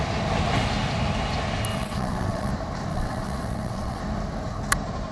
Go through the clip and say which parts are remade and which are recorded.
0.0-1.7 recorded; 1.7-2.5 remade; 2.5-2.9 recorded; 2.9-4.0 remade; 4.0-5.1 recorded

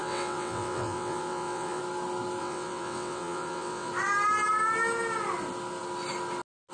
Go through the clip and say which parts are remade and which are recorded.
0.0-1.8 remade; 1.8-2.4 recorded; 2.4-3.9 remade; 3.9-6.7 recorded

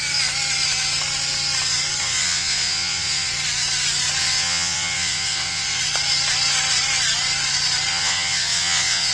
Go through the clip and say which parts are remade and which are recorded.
0.0-2.0 recorded; 2.0-3.3 remade; 3.3-4.2 recorded; 4.2-5.8 remade; 5.8-7.9 recorded; 7.9-9.1 remade

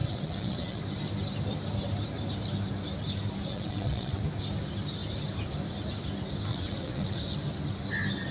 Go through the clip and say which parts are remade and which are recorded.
0.0-0.8 remade; 0.8-3.5 recorded; 3.5-4.2 remade; 4.2-6.5 recorded; 6.5-7.2 remade; 7.2-8.3 recorded

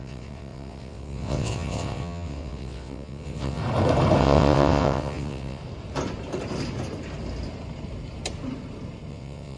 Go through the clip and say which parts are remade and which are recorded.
0.0-3.6 remade; 3.6-4.2 recorded; 4.2-5.6 remade; 5.6-9.1 recorded; 9.1-9.6 remade